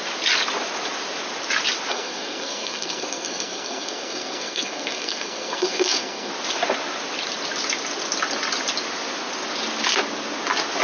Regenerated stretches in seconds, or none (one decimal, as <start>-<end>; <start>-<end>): 1.9-6.3